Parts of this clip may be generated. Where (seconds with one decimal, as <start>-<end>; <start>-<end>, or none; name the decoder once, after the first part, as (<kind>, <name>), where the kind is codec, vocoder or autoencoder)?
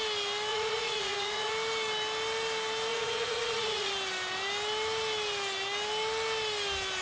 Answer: 0.5-1.5 (vocoder, Vocos); 2.9-3.9